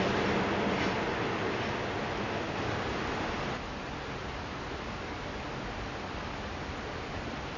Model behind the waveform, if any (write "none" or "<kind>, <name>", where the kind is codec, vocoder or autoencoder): none